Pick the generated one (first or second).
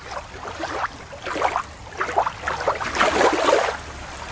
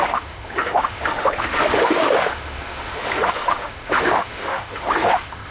second